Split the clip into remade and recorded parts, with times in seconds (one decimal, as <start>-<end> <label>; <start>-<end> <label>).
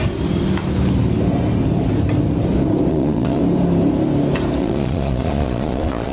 0.0-2.9 recorded; 2.9-3.4 remade; 3.4-4.6 recorded; 4.6-6.1 remade